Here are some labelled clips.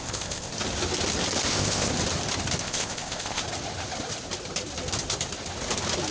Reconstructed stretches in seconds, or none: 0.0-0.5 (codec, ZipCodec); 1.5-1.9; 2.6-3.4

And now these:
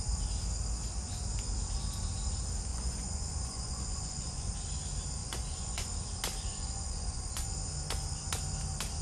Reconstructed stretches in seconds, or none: 2.7-4.5 (vocoder, Vocos); 5.2-5.9; 6.5-7.5